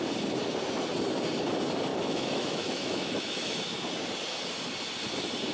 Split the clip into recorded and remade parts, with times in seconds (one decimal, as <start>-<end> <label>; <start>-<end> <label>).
0.0-1.9 recorded; 1.9-3.7 remade; 3.7-5.5 recorded